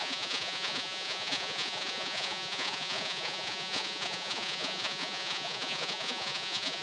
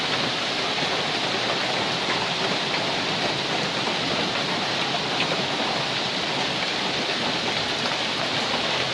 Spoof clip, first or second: first